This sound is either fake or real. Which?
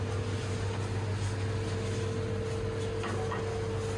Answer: real